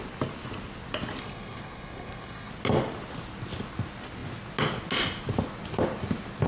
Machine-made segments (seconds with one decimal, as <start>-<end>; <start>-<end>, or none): 1.2-2.5